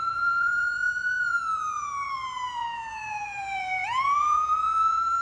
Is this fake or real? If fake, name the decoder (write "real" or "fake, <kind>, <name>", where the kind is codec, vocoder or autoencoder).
fake, vocoder, Vocos